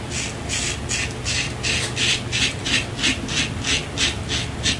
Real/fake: real